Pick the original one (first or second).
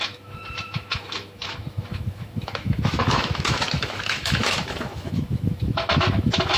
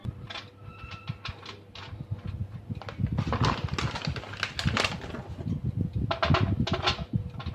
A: second